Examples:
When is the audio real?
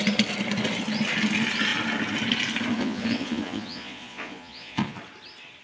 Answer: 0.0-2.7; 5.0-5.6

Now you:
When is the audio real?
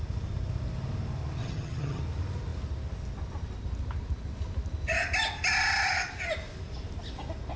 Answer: 0.0-1.4; 2.0-7.6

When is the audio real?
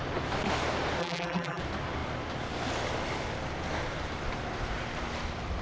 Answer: 0.0-1.0; 1.6-5.6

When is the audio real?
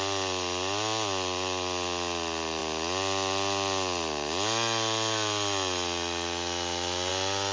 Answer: 0.0-7.5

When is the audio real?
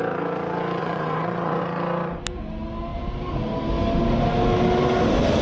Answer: 0.0-0.8; 1.6-5.4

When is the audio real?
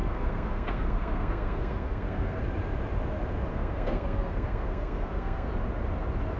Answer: 2.4-3.5; 5.5-6.4